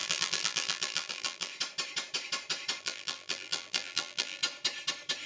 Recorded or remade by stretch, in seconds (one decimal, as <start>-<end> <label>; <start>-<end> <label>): 0.0-1.5 remade; 1.5-2.8 recorded; 2.8-4.4 remade; 4.4-5.3 recorded